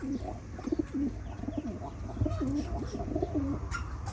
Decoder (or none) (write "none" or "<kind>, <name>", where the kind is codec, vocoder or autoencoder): none